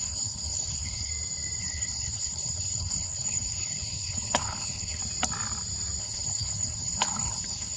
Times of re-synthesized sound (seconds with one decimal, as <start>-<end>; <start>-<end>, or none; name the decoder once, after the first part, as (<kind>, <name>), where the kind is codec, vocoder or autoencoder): 0.0-1.1 (codec, HILCodec); 1.6-5.0; 6.0-7.8